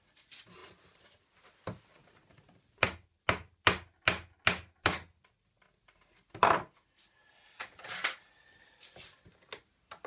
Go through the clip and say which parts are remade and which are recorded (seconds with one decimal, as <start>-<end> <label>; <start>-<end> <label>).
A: 0.0-10.1 recorded